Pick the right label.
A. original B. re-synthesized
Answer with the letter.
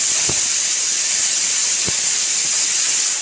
B